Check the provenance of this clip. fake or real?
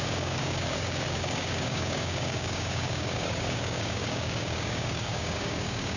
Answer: fake